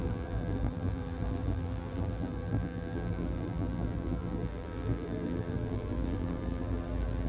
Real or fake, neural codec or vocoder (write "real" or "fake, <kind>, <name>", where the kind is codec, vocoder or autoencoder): fake, vocoder, BigVGAN v2